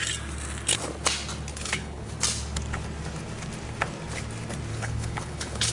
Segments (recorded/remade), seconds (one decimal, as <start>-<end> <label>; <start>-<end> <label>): 0.0-1.5 recorded; 1.5-2.1 remade; 2.1-4.7 recorded; 4.7-5.7 remade